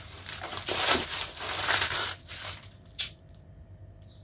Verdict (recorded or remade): remade